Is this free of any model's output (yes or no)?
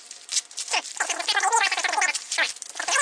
yes